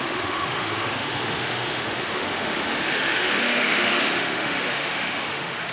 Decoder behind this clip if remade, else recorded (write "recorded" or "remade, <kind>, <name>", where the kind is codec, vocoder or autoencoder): remade, autoencoder, DAC-VAE